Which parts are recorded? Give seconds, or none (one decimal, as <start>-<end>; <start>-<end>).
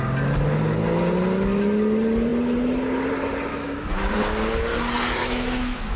0.0-3.5; 4.1-5.2